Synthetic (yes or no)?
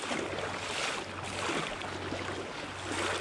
no